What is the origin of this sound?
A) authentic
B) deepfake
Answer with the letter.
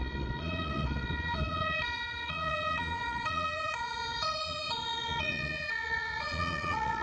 B